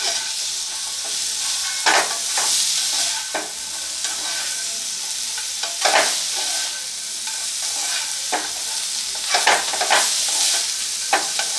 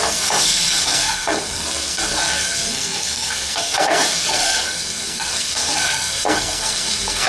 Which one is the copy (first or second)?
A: second